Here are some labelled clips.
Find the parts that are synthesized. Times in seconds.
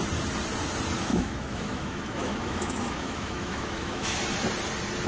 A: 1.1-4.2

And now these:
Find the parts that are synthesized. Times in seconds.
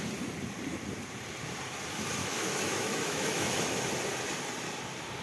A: 2.2-3.8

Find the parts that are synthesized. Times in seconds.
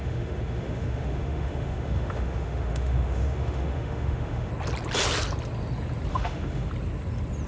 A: 0.0-4.5; 6.1-6.7